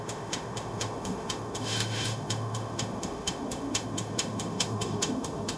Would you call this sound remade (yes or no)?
yes